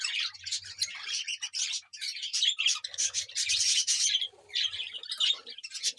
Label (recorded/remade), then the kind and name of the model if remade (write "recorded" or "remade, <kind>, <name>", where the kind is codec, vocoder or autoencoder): remade, vocoder, BigVGAN v2